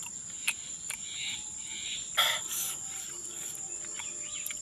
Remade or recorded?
recorded